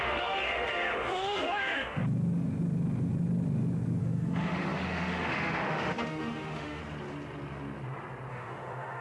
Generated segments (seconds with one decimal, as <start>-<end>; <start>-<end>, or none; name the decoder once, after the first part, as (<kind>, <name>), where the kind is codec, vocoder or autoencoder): 0.0-2.0 (autoencoder, DAC-VAE); 4.0-6.8; 8.3-9.0